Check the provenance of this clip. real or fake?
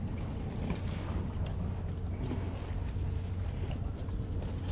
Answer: real